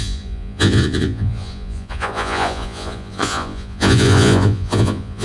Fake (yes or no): yes